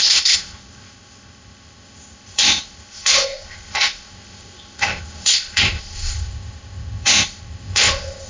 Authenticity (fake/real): fake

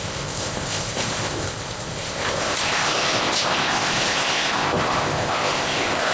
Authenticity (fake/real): fake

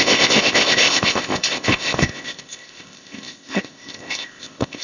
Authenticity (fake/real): fake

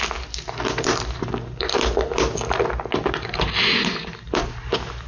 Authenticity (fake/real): real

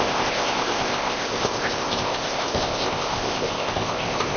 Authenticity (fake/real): fake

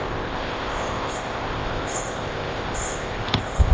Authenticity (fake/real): fake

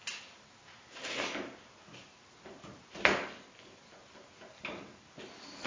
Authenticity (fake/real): real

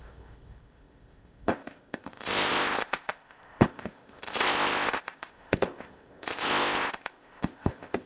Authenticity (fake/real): fake